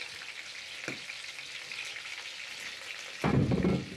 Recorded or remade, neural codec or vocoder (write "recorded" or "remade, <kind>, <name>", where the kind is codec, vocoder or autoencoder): recorded